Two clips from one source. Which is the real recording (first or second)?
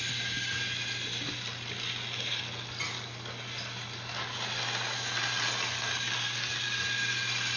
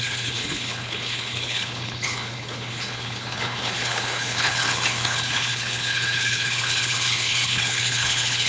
first